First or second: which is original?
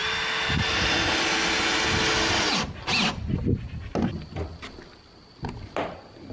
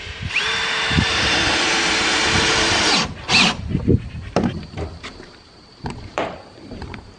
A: first